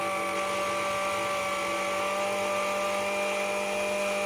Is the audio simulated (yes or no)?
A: no